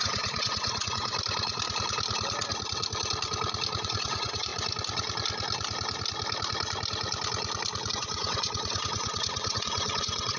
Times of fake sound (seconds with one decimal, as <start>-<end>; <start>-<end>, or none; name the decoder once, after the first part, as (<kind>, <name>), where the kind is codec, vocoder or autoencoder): 0.0-1.1 (vocoder, WaveNeXt); 3.8-4.5; 7.9-10.4